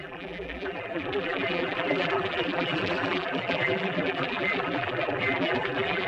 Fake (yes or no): yes